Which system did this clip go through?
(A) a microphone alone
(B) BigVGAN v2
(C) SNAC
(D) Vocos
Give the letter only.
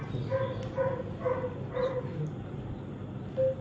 A